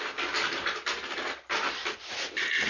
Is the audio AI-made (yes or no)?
no